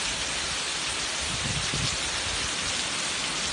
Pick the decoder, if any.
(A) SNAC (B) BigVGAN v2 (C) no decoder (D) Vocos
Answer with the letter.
C